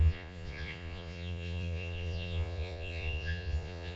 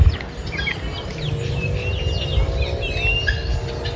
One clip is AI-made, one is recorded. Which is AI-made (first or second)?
first